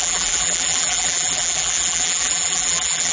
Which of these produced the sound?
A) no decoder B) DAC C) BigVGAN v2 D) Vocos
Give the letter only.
C